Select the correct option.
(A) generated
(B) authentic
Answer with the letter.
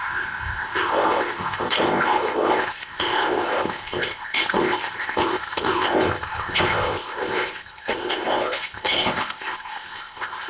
A